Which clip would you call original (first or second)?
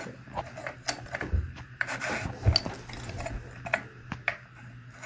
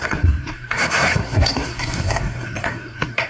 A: first